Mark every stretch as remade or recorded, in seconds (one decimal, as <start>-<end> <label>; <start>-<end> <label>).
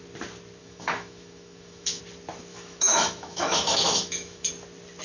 0.0-0.6 recorded; 0.6-2.0 remade; 2.0-2.5 recorded; 2.5-4.5 remade; 4.5-5.0 recorded